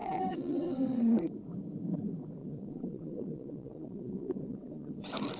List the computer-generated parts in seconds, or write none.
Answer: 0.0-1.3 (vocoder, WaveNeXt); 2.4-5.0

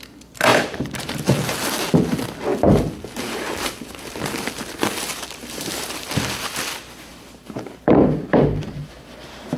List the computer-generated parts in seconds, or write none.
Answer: 0.5-1.7 (vocoder, BigVGAN v2); 2.5-6.1; 7.1-9.6